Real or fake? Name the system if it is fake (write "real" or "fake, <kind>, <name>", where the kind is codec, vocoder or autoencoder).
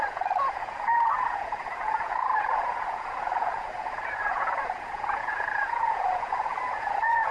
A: fake, vocoder, Vocos